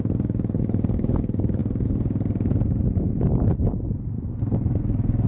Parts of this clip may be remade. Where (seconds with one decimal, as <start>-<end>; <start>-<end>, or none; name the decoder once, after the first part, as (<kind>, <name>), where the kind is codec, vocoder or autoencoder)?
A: none